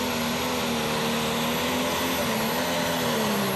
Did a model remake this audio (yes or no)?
no